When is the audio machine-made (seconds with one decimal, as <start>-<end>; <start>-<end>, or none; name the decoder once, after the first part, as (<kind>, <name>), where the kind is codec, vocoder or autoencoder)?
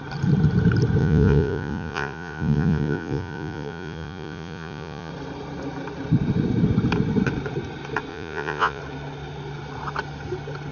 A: 1.0-5.1 (vocoder, Vocos); 8.1-8.8